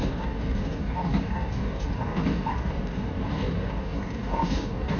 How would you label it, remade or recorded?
remade